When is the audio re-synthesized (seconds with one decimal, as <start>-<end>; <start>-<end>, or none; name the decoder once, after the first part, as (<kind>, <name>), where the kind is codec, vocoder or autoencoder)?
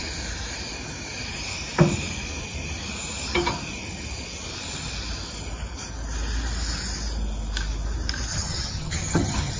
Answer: 8.3-9.6 (vocoder, HiFi-GAN)